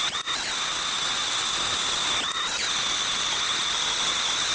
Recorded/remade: recorded